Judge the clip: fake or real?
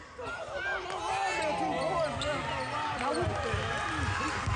real